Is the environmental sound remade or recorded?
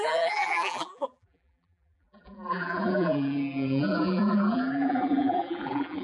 remade